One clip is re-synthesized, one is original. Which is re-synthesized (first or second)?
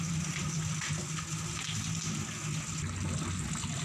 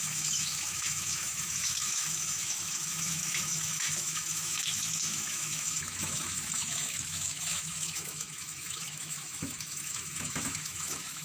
second